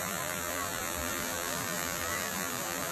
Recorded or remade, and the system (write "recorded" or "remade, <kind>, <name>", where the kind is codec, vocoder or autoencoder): remade, vocoder, BigVGAN v2